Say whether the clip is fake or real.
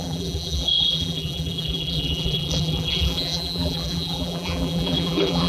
fake